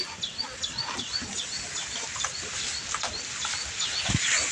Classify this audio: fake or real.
real